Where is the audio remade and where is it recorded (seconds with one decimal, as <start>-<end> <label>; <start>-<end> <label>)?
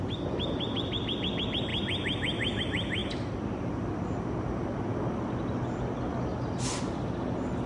0.0-7.7 recorded